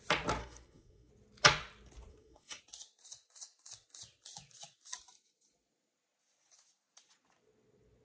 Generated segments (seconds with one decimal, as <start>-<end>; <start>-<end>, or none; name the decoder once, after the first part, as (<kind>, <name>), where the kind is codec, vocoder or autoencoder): 0.4-1.1 (codec, SNAC); 2.1-2.6